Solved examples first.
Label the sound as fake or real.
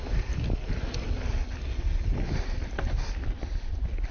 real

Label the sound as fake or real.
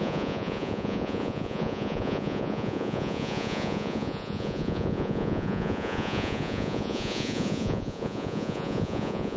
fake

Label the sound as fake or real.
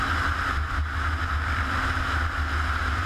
real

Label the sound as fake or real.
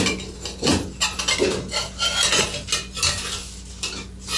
real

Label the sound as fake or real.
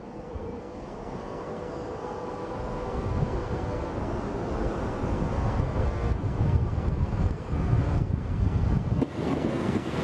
fake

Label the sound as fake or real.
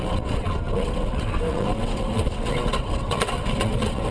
fake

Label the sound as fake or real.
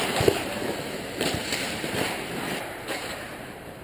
fake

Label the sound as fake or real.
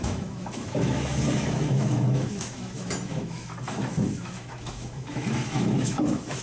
fake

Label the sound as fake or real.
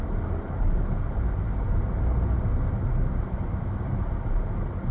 real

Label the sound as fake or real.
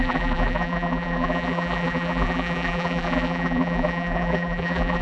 fake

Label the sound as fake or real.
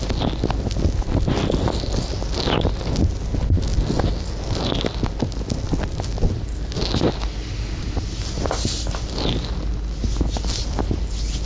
real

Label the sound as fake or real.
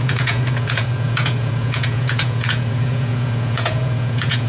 fake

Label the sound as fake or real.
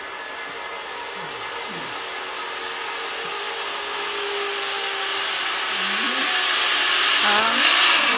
real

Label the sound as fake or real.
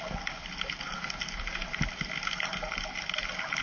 real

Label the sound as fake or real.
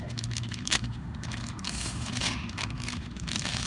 fake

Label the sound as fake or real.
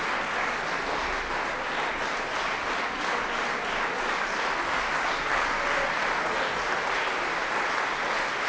real